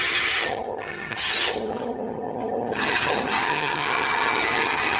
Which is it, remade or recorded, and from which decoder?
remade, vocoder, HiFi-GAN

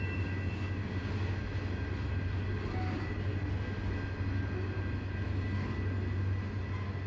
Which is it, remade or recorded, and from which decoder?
recorded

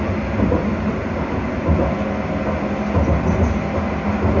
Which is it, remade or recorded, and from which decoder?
recorded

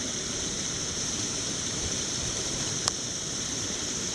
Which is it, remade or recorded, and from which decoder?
remade, vocoder, BigVGAN v2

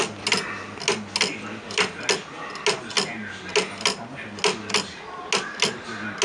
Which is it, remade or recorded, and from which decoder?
recorded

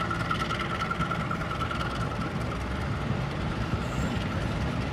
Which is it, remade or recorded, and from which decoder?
recorded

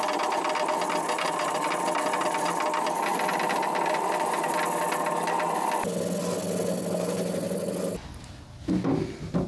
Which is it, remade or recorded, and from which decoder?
recorded